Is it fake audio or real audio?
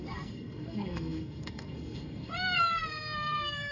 fake